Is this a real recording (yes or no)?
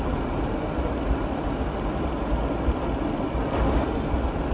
yes